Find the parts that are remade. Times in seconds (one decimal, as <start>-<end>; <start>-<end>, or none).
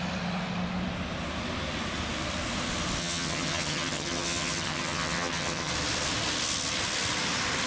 3.0-5.7